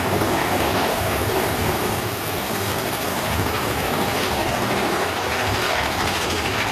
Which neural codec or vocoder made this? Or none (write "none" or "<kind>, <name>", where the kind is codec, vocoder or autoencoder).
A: codec, DAC